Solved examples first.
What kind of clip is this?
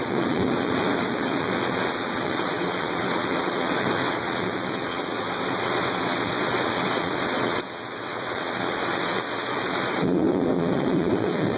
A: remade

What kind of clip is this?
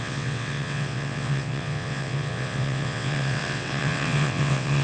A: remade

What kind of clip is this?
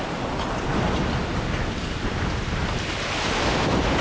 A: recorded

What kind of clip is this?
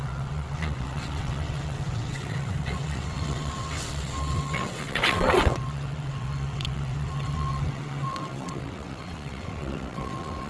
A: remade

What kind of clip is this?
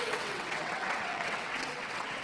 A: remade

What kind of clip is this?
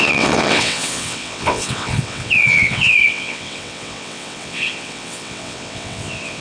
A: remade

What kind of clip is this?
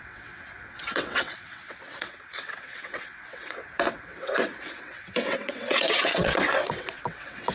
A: remade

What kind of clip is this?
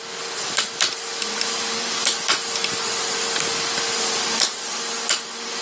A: recorded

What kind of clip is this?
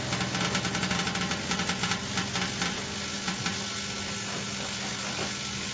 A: recorded